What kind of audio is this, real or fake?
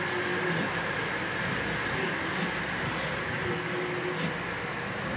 real